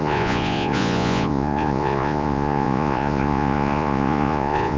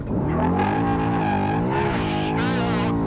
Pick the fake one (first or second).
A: first